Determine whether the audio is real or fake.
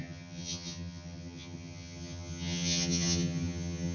fake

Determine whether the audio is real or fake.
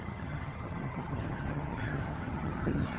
fake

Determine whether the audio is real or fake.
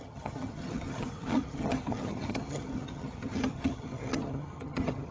fake